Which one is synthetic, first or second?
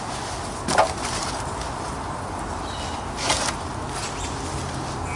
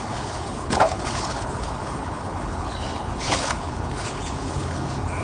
second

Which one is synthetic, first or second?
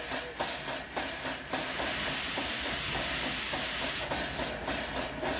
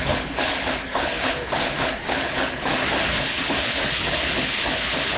second